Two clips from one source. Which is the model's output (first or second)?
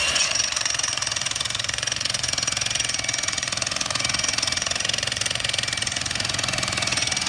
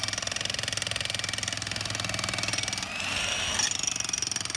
first